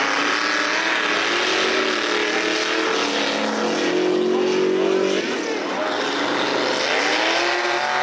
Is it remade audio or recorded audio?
recorded